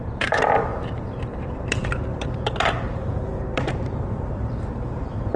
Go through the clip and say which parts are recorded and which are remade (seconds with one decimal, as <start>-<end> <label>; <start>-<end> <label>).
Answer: 0.0-5.4 remade